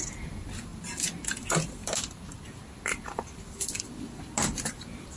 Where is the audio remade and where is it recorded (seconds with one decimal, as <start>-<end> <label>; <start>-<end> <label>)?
0.0-5.2 recorded